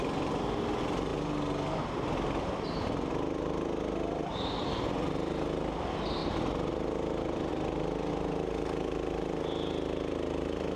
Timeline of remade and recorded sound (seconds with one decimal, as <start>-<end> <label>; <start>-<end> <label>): 0.0-10.8 recorded